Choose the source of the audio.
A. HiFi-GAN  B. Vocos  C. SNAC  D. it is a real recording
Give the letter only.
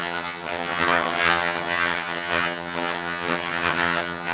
A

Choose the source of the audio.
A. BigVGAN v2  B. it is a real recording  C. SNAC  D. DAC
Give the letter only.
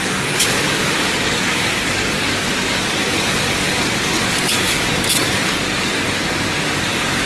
D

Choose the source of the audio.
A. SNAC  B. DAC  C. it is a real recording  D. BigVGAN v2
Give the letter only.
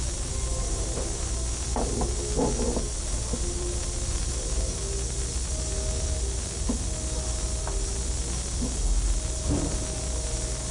C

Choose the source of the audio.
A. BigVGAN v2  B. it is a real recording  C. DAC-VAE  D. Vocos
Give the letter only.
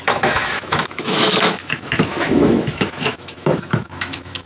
C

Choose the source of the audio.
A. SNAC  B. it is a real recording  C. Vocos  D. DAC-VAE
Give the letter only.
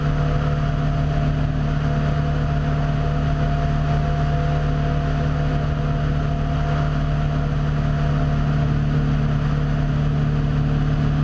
B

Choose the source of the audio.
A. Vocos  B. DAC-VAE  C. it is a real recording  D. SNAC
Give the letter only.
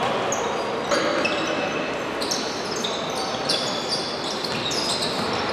C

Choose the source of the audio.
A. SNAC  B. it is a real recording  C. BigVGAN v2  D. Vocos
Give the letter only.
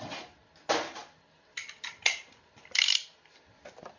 B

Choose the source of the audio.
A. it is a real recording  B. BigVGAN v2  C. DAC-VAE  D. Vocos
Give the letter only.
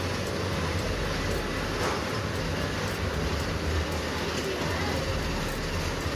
A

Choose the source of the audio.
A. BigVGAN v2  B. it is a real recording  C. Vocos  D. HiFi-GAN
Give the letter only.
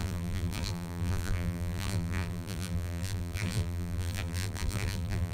A